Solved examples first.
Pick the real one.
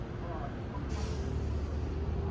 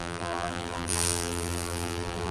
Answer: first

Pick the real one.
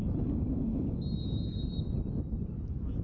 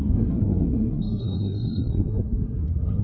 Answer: first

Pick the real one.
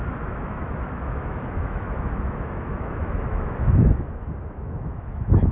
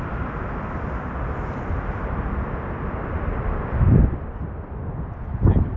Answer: second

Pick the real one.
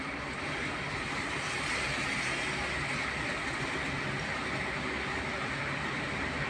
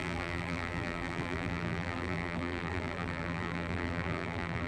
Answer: first